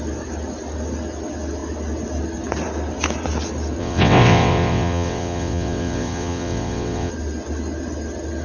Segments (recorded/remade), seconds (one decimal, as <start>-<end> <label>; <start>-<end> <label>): 0.0-3.8 recorded; 3.8-7.1 remade; 7.1-8.4 recorded